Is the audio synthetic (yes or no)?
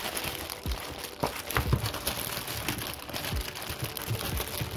no